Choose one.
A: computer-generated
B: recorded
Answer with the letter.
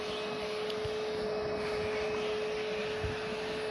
B